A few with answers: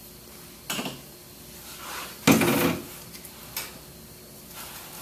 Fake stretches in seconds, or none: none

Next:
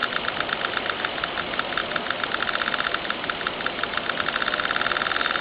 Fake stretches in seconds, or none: none

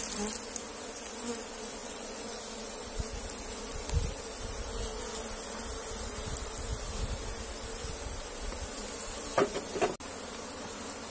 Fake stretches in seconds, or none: 1.8-2.4

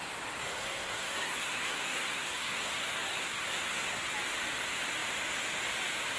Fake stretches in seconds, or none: 0.4-4.1

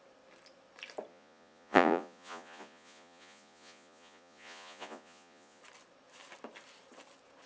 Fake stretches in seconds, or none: 1.1-5.6